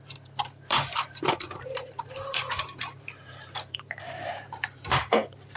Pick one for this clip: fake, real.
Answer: fake